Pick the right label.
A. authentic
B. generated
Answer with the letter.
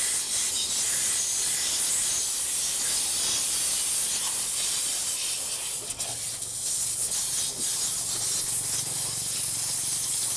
A